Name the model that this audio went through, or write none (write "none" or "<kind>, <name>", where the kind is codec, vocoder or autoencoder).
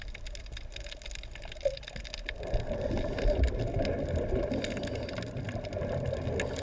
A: none